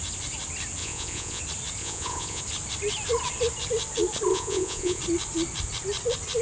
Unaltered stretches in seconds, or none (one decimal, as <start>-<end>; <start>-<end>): 0.0-0.8; 1.4-1.8; 2.4-4.3; 5.0-6.4